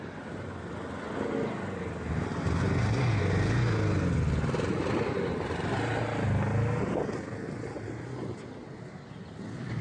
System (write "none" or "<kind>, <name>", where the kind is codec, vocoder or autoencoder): none